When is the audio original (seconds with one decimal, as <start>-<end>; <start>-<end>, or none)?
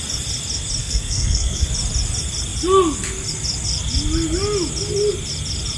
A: 0.0-0.8; 1.7-5.8